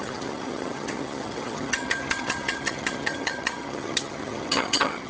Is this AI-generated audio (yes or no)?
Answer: yes